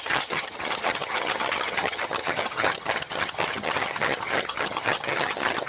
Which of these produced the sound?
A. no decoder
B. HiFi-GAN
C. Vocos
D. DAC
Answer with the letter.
B